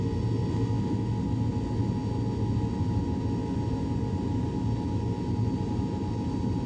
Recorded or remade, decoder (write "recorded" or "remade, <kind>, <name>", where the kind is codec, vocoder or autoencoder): recorded